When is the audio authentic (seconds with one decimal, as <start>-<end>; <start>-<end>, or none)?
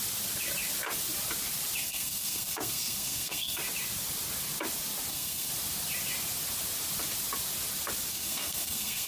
0.0-1.8; 3.6-5.1; 5.5-8.1